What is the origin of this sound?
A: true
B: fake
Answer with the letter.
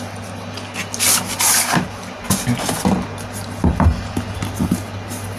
A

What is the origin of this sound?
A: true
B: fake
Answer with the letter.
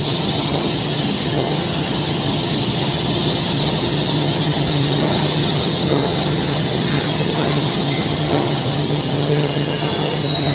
B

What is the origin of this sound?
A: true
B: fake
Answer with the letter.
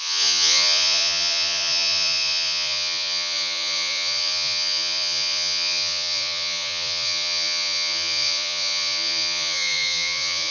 B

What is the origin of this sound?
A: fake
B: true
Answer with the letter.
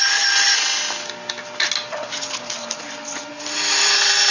B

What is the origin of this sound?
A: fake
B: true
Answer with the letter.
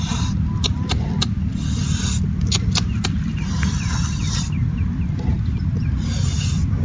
A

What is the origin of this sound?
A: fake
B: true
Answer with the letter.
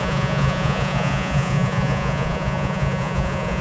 A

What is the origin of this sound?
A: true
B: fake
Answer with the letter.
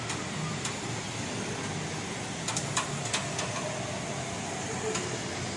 A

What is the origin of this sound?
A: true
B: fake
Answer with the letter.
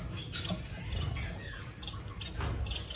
A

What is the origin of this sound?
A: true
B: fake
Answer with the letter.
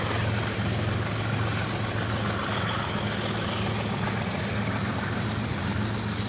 A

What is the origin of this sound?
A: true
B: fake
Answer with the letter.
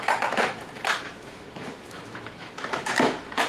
B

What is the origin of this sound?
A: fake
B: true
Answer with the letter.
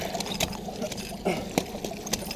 B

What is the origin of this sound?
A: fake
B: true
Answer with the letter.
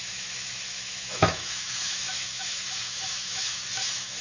A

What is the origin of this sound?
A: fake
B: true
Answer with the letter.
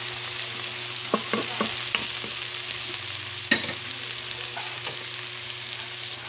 B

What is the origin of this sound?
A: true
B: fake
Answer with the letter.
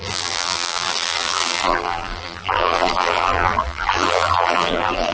B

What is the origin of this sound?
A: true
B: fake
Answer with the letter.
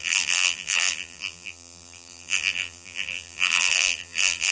B